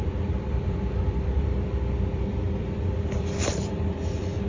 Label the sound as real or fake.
fake